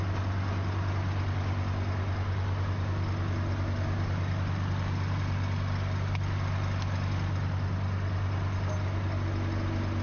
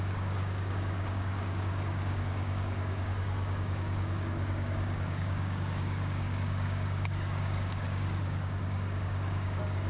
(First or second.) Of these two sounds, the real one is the first